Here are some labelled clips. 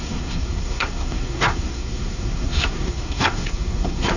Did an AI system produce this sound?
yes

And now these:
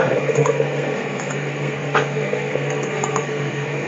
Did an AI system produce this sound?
yes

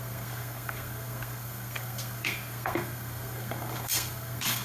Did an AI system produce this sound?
yes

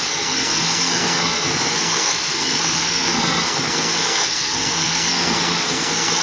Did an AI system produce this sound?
yes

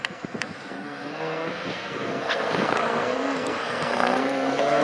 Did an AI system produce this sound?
yes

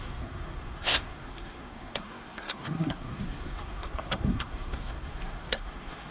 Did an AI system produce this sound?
yes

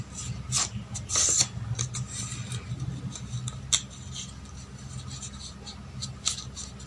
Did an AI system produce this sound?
no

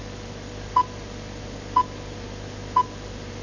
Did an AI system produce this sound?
no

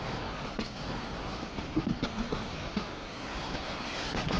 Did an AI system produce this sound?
yes